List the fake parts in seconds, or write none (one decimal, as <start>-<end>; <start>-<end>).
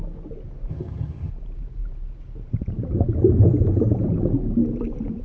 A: 0.7-1.3